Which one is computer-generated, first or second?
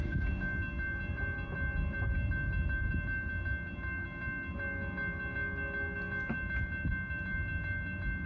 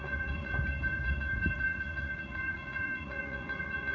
second